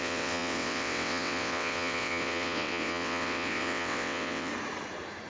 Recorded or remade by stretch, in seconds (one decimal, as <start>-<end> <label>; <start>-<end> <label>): 0.0-4.5 remade; 4.5-5.3 recorded